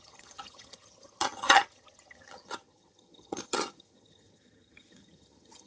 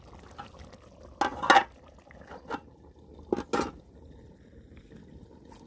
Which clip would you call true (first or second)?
second